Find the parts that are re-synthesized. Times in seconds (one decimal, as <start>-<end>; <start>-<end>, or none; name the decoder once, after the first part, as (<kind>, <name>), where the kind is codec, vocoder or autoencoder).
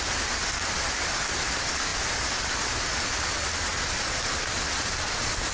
none